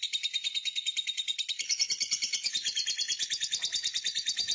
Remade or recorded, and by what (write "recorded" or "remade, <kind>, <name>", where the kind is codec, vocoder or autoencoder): recorded